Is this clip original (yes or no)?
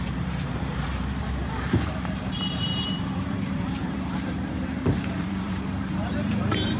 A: no